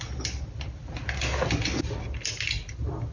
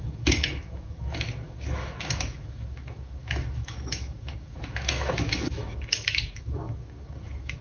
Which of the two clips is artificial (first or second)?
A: second